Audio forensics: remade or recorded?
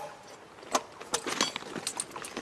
recorded